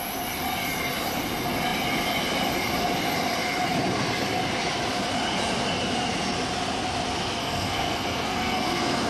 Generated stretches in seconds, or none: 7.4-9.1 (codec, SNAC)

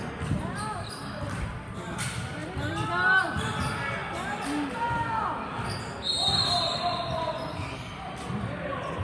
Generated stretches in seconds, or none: none

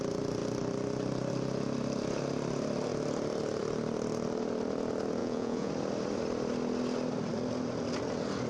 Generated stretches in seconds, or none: 5.2-5.7 (vocoder, Vocos)

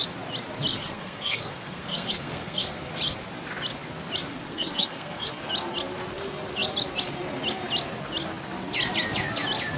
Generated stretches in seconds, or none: 0.7-2.9 (codec, SNAC); 4.3-5.3

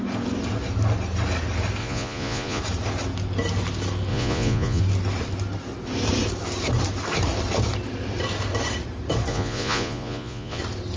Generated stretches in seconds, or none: 1.8-2.6 (vocoder, Vocos); 4.1-4.8; 9.3-10.6

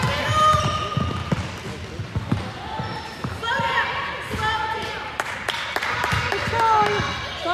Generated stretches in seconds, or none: 2.9-5.1 (vocoder, BigVGAN v2)